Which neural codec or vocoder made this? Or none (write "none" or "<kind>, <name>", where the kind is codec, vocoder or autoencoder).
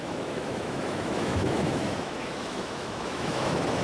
autoencoder, DAC-VAE